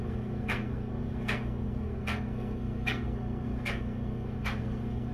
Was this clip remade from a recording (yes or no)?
yes